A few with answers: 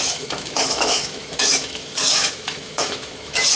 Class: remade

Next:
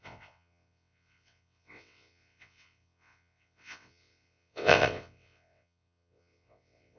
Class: remade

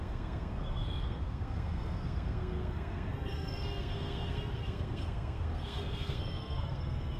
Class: remade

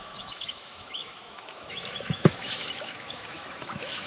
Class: remade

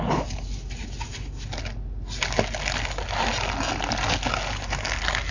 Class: recorded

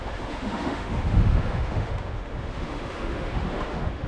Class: remade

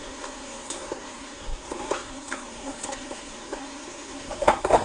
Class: remade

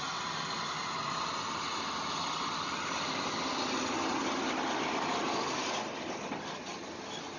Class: recorded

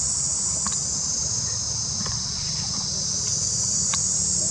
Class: remade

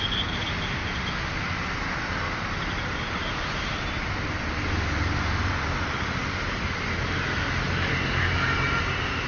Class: recorded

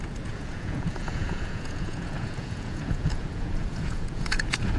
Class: remade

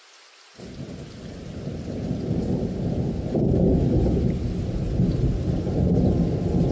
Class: recorded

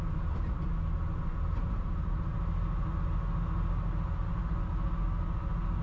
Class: recorded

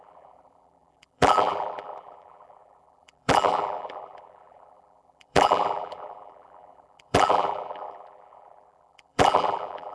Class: remade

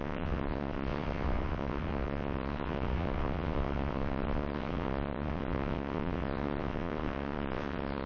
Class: remade